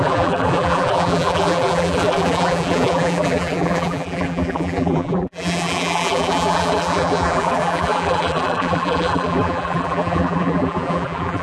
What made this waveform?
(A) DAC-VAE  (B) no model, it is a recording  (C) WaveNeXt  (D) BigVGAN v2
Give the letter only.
D